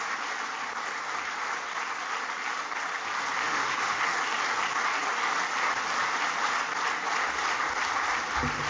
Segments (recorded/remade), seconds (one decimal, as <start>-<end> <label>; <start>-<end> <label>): 0.0-3.4 recorded; 3.4-4.0 remade; 4.0-8.7 recorded